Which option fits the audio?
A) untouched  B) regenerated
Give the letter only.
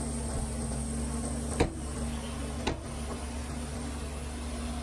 A